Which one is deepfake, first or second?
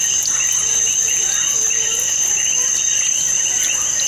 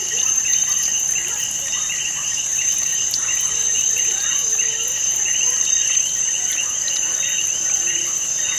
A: second